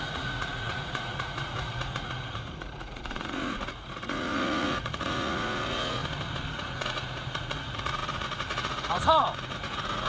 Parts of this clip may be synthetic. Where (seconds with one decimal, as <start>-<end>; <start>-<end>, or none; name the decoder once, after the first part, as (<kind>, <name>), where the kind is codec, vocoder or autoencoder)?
0.0-6.0 (vocoder, Vocos); 6.5-10.1